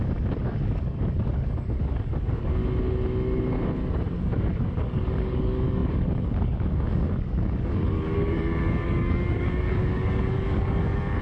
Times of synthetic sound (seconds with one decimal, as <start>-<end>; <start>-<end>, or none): 0.0-2.6; 4.2-11.2